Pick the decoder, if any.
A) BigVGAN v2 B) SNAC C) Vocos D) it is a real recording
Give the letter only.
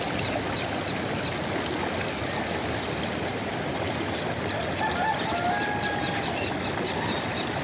D